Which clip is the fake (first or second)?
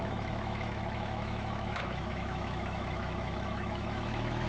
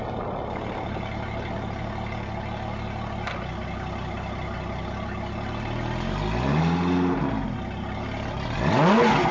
first